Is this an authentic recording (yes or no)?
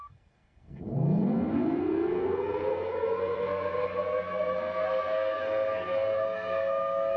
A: no